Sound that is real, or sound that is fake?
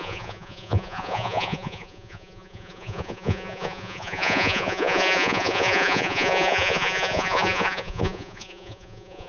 fake